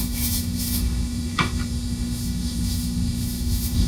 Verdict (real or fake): fake